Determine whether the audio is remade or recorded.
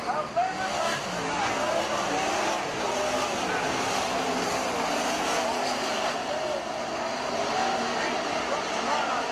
recorded